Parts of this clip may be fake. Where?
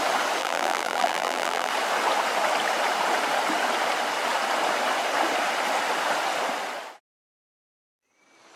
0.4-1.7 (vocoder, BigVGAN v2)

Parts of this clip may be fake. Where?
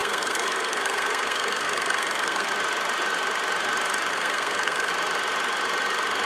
0.0-2.5 (codec, SNAC); 4.1-4.9